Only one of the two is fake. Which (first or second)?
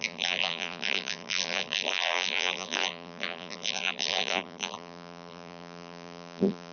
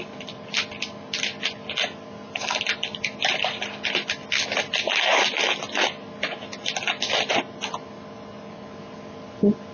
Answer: first